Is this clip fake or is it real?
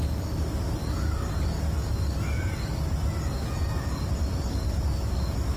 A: real